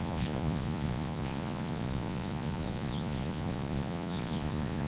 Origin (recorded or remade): remade